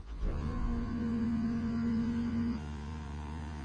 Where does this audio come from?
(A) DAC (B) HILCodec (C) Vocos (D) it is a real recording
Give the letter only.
C